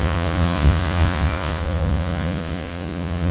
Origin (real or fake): fake